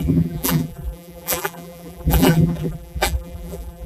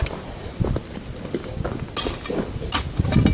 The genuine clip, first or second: second